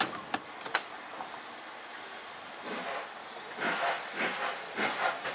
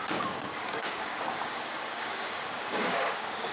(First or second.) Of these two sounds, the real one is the first